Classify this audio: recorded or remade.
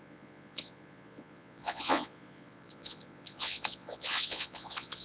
remade